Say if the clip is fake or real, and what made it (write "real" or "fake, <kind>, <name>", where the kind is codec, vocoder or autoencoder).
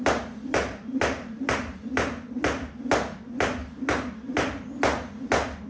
real